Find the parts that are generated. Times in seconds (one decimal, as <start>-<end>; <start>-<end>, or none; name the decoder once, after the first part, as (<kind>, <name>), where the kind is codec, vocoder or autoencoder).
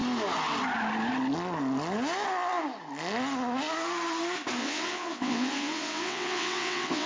4.6-7.1 (vocoder, WaveNeXt)